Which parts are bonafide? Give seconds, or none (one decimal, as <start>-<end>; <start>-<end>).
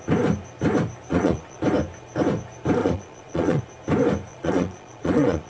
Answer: 0.0-1.1; 1.6-2.8; 3.6-4.3